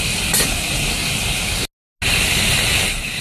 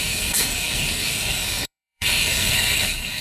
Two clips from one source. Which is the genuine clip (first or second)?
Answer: first